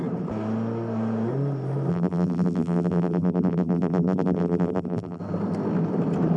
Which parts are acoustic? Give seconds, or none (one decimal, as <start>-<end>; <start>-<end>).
0.0-1.9; 5.2-6.4